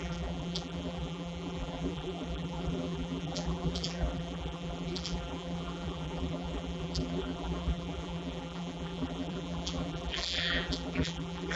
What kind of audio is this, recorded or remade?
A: remade